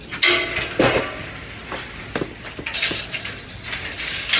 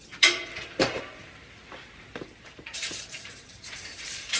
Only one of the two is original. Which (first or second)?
first